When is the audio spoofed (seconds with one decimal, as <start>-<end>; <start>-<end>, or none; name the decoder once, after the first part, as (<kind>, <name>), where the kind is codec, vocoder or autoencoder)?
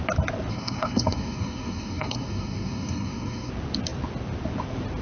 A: 0.5-3.5 (codec, SNAC)